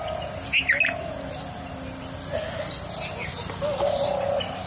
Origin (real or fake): real